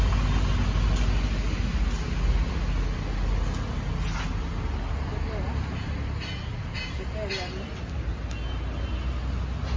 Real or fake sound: real